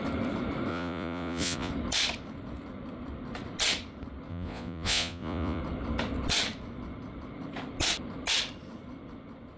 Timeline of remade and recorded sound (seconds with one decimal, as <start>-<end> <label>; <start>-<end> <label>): 0.0-0.7 recorded; 0.7-1.7 remade; 1.7-4.3 recorded; 4.3-5.6 remade; 5.6-9.6 recorded

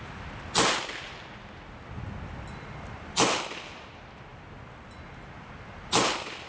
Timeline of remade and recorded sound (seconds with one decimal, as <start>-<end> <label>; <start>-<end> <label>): 0.0-6.5 recorded

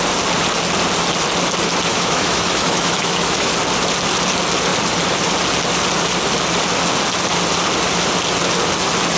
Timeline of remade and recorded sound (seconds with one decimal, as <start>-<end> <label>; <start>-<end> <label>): 0.0-1.9 recorded; 1.9-3.5 remade; 3.5-9.2 recorded

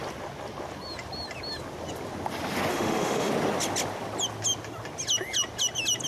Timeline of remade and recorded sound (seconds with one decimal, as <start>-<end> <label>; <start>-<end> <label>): 0.0-2.7 recorded; 2.7-3.3 remade; 3.3-6.1 recorded

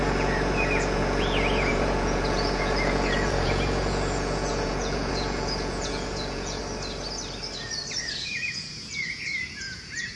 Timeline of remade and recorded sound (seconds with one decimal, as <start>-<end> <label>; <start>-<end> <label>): 0.0-6.6 remade; 6.6-8.0 recorded; 8.0-10.2 remade

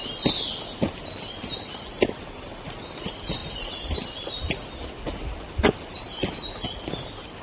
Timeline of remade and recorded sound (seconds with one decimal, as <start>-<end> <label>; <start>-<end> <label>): 0.0-7.4 recorded

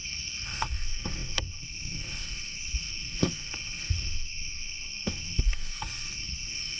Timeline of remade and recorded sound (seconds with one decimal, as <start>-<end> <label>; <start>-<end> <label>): 0.0-6.8 remade

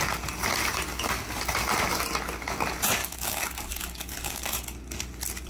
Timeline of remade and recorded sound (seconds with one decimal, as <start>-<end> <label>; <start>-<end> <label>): 0.0-0.9 recorded; 0.9-1.4 remade; 1.4-3.0 recorded; 3.0-4.6 remade; 4.6-5.5 recorded